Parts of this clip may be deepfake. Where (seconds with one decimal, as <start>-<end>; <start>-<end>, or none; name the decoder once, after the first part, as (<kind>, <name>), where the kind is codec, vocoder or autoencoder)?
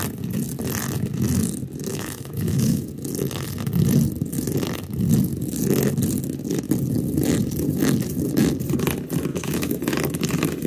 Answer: 1.9-2.9 (autoencoder, DAC-VAE); 9.3-9.8